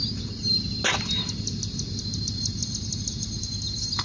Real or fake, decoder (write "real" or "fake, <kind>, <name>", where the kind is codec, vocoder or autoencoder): real